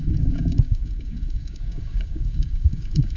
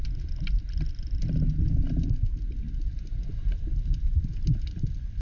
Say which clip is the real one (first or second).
second